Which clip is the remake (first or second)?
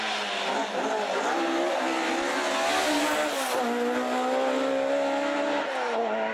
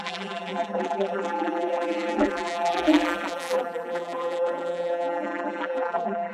second